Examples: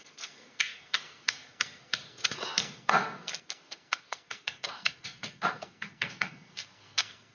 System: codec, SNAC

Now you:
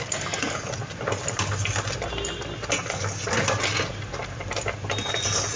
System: none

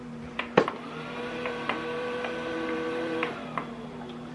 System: vocoder, BigVGAN v2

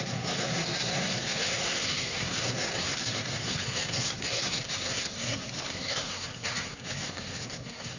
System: codec, SNAC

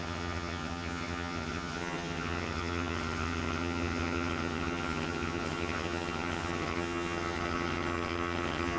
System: vocoder, HiFi-GAN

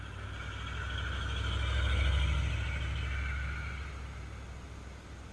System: none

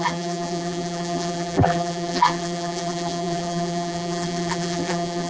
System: vocoder, BigVGAN v2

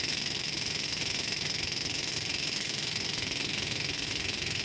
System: autoencoder, DAC-VAE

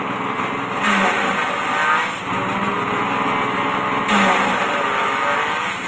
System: none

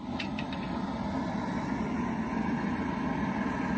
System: none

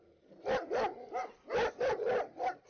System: none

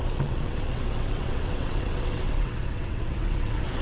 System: vocoder, WaveNeXt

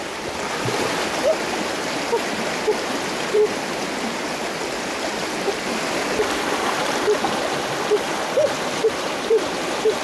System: vocoder, BigVGAN v2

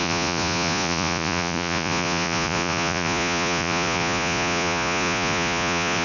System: vocoder, Vocos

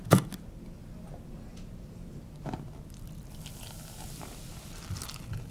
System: none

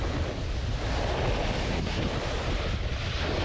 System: none